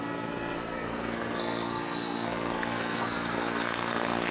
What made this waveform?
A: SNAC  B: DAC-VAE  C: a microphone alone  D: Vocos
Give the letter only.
A